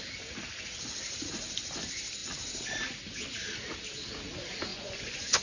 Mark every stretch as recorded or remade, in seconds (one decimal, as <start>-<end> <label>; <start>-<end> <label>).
0.0-4.7 recorded; 4.7-5.4 remade